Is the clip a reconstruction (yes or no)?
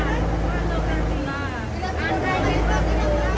no